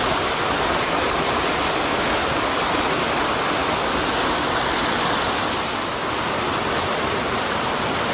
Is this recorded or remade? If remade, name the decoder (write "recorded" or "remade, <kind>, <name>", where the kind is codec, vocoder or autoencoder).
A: recorded